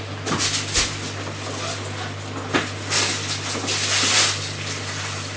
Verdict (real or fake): real